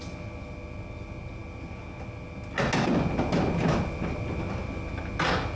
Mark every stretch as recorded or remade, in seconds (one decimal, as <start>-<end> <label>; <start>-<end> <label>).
0.0-5.6 recorded